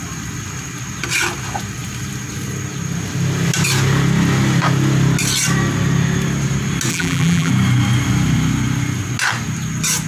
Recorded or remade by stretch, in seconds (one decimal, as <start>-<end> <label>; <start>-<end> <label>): 0.0-6.9 recorded; 6.9-7.5 remade; 7.5-10.1 recorded